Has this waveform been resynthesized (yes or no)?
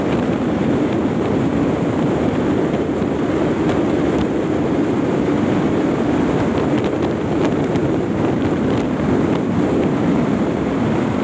yes